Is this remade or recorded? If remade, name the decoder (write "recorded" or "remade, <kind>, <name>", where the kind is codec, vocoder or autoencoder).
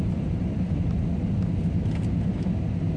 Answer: recorded